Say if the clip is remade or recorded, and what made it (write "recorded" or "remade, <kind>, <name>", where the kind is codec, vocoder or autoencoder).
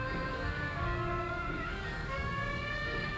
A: remade, codec, DAC